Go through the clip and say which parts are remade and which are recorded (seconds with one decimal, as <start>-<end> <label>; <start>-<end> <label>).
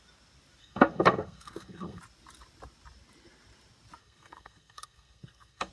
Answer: 0.0-0.6 recorded; 0.6-2.0 remade; 2.0-4.0 recorded; 4.0-5.7 remade